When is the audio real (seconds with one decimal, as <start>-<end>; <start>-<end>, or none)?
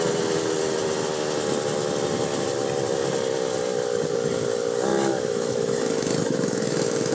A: 0.0-4.9